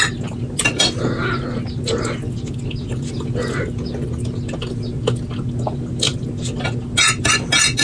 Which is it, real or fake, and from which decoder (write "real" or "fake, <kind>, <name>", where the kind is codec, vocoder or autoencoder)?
real